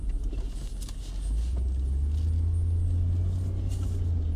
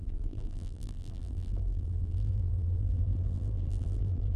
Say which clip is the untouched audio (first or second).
first